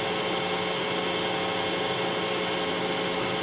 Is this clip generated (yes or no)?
no